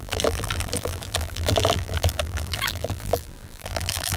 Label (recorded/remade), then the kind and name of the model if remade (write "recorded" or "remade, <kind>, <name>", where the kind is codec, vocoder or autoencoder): remade, vocoder, BigVGAN v2